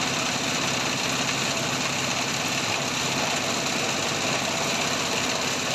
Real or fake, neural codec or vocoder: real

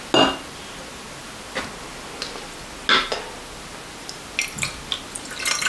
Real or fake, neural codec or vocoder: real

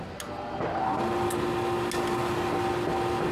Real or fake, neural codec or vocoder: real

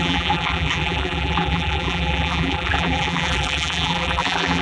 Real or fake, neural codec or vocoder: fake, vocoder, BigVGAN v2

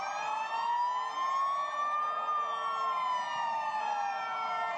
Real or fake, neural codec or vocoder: real